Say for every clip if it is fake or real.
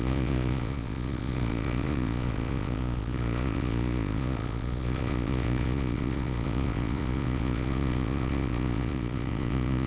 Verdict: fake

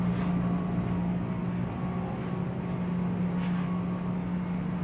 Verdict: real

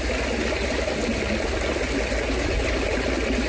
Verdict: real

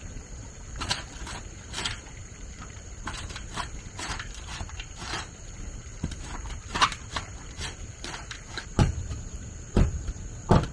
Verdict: fake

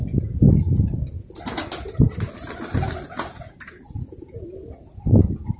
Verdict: real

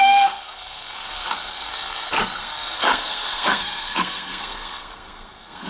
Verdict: fake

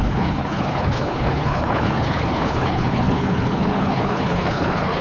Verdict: fake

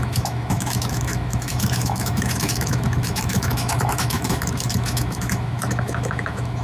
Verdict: fake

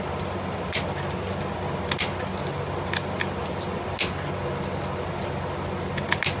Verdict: real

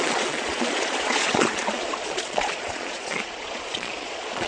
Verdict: fake